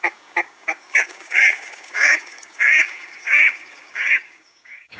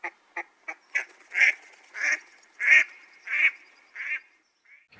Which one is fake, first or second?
first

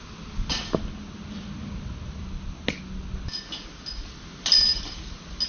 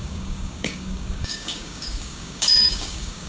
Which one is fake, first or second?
second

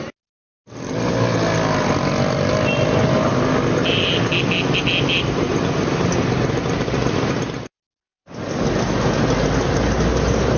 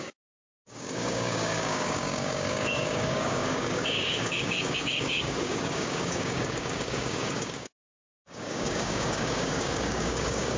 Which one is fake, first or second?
second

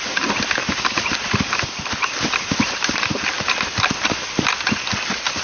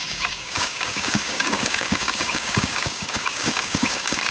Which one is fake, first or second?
second